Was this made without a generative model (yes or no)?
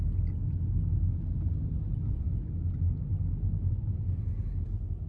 yes